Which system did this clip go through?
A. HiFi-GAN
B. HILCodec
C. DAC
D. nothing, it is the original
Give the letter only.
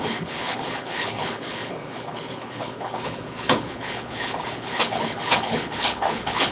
B